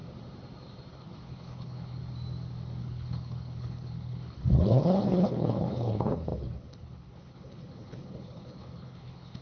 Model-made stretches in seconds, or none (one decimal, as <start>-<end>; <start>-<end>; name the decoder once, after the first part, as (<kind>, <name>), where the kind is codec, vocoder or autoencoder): 0.9-2.0 (codec, HILCodec); 2.8-9.4